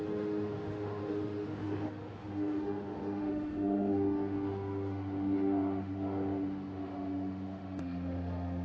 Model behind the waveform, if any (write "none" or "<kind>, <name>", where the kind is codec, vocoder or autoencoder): autoencoder, DAC-VAE